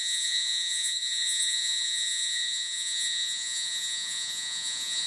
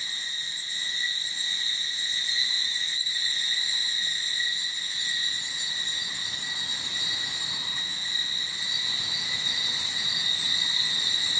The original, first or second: second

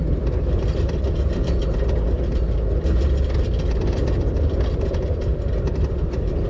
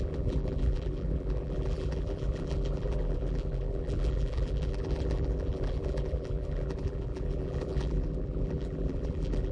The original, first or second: first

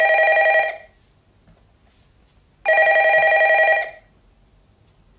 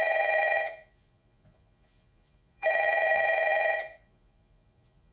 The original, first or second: first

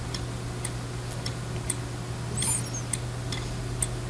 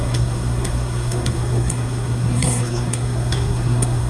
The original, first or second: first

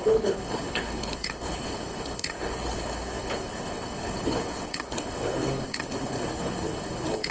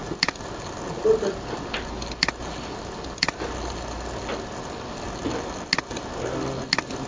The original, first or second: second